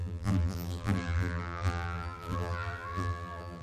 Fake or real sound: fake